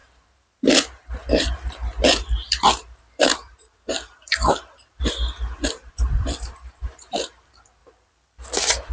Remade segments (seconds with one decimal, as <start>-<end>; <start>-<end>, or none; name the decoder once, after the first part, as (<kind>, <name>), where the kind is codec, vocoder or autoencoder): 0.0-7.8 (vocoder, BigVGAN v2)